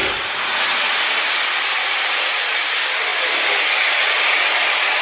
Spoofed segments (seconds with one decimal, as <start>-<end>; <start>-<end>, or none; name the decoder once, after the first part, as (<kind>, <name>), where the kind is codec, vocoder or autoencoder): 1.1-5.0 (vocoder, BigVGAN v2)